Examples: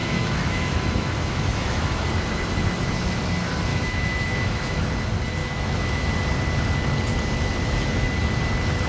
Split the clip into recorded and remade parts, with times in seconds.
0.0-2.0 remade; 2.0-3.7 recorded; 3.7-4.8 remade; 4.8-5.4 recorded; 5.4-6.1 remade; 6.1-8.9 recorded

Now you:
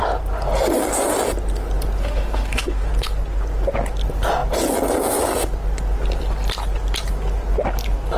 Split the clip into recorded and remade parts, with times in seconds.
0.0-2.0 recorded; 2.0-2.9 remade; 2.9-8.2 recorded

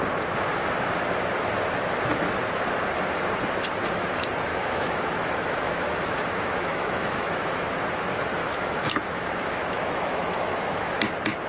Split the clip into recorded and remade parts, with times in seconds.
0.0-4.5 recorded; 4.5-7.6 remade; 7.6-8.4 recorded; 8.4-10.9 remade; 10.9-11.5 recorded

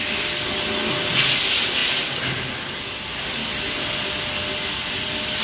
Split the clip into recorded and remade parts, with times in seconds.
0.0-5.4 recorded

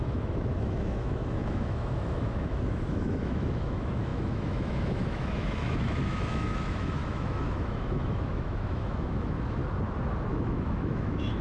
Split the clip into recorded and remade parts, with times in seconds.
0.0-9.6 remade; 9.6-10.3 recorded; 10.3-11.4 remade

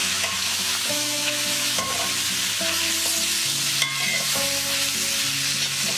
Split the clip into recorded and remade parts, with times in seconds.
0.0-1.9 remade; 1.9-6.0 recorded

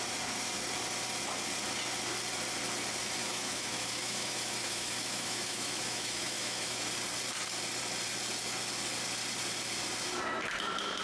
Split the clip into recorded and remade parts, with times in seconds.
0.0-3.2 recorded; 3.2-6.8 remade; 6.8-11.0 recorded